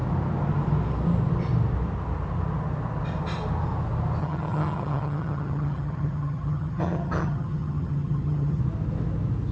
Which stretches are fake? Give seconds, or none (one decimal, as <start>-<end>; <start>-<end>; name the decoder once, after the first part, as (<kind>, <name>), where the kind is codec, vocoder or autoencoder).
4.2-8.6 (vocoder, HiFi-GAN)